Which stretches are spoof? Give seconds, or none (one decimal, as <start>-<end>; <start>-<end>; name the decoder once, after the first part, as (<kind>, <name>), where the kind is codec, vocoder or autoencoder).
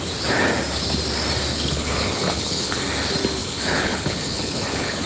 1.5-2.8 (codec, HILCodec); 3.4-5.1